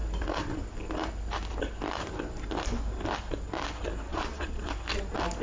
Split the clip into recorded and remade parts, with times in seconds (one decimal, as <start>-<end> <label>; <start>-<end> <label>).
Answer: 0.0-4.1 recorded; 4.1-4.7 remade; 4.7-5.4 recorded